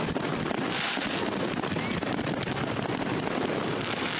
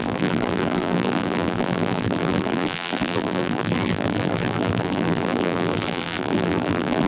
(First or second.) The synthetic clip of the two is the second